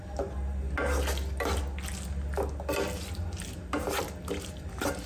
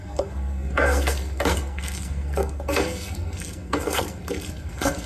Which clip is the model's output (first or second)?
second